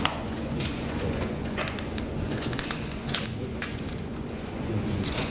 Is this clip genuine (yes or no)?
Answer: no